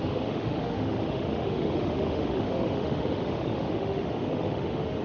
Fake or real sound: fake